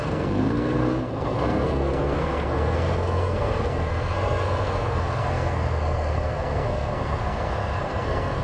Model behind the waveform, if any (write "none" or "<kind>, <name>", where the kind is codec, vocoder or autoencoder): codec, SNAC